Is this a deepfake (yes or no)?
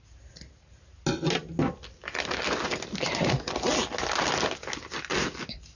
no